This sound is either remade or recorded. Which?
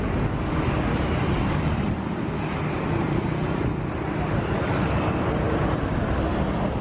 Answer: recorded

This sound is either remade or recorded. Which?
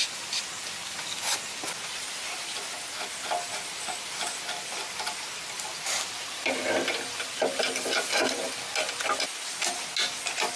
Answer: recorded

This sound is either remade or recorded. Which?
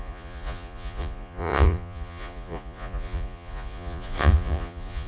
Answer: remade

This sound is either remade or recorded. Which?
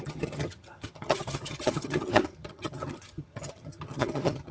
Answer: remade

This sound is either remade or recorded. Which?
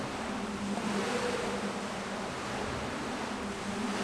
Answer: recorded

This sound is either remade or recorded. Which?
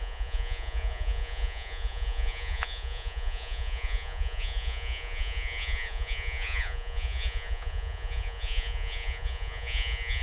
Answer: remade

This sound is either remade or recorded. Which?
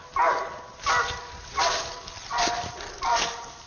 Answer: recorded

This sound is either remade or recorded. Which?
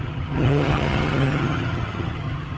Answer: remade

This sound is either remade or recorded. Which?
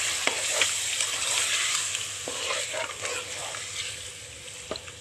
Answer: recorded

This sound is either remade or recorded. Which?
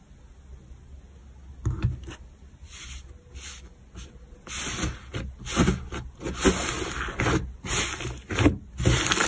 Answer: recorded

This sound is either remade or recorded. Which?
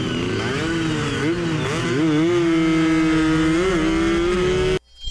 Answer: recorded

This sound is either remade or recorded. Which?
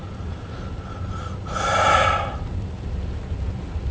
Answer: recorded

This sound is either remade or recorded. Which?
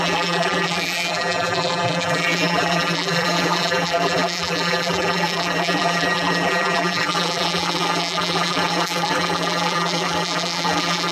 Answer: remade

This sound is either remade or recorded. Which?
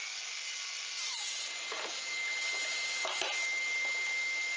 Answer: recorded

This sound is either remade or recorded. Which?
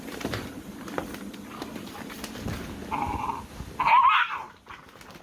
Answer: recorded